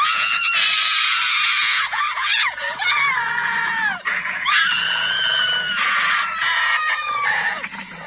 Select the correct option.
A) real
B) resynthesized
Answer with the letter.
B